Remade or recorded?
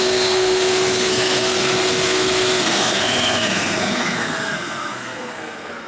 remade